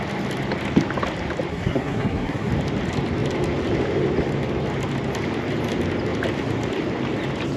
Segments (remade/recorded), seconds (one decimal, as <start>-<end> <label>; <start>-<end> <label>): 0.0-1.5 recorded; 1.5-2.5 remade; 2.5-7.6 recorded